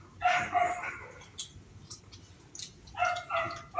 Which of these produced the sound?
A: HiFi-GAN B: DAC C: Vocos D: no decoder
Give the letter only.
D